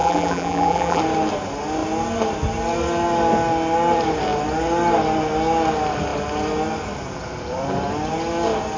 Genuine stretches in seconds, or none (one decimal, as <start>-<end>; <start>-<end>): 1.0-8.8

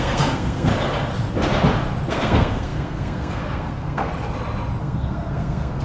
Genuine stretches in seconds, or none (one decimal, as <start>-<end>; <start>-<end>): 0.7-2.1; 4.1-4.8

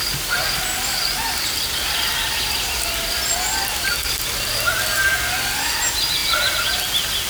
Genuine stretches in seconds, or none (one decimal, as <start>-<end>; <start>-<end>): 0.0-6.2; 6.7-7.3

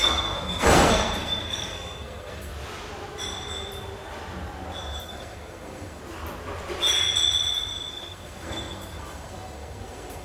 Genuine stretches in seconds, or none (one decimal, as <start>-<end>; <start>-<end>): 2.5-5.0; 6.0-7.9

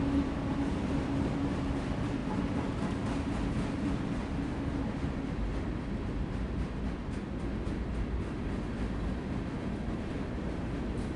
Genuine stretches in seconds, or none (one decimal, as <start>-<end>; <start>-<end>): 0.0-11.2

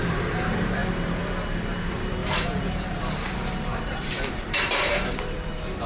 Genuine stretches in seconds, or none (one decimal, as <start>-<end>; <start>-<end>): 0.8-1.8

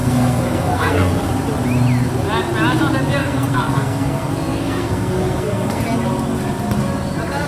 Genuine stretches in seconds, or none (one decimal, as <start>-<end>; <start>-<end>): 1.3-3.2; 5.8-7.5

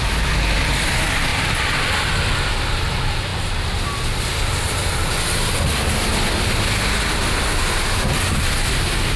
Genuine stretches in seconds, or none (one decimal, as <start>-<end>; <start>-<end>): 0.0-1.3; 2.3-9.2